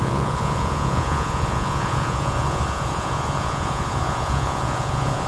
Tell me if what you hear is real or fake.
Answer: fake